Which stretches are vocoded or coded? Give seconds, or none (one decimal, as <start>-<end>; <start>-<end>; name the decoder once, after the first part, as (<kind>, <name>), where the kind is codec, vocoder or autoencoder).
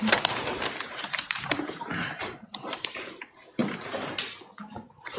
0.0-3.6 (vocoder, BigVGAN v2); 4.6-5.2